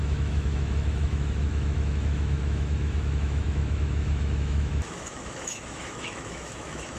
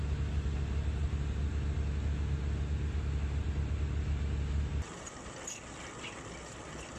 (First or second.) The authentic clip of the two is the second